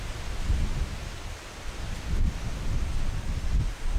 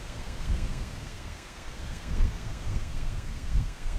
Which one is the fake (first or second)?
second